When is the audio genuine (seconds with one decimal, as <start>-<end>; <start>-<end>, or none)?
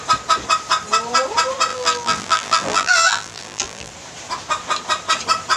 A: 0.0-1.7; 3.9-5.6